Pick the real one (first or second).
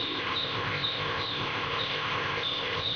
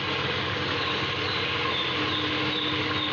second